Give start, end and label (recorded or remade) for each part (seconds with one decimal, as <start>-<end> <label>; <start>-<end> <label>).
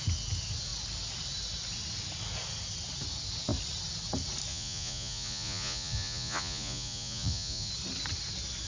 0.0-4.5 recorded; 4.5-7.7 remade; 7.7-8.7 recorded